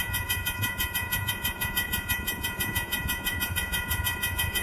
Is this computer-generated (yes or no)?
yes